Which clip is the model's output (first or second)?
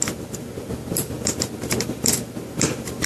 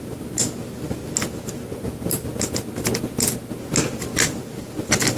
first